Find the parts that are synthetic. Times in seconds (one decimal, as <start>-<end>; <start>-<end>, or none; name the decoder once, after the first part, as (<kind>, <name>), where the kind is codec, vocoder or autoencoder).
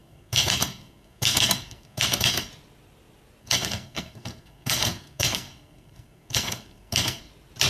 0.0-2.5 (codec, SNAC); 3.4-7.3